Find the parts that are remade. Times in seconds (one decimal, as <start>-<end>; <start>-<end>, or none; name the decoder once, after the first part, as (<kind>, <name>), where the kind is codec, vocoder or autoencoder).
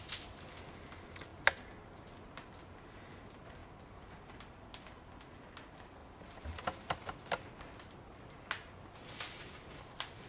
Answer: none